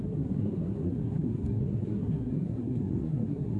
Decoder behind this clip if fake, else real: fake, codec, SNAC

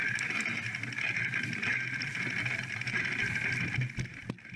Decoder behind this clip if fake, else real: real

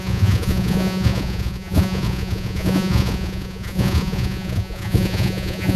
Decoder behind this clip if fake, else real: fake, vocoder, Vocos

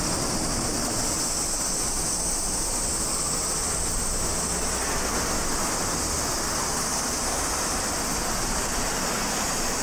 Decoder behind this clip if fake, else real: real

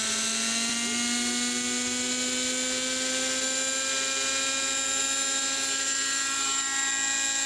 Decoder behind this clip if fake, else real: real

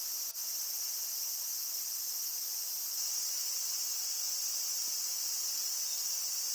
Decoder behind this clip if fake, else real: real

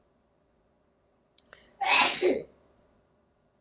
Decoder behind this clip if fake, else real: fake, vocoder, Vocos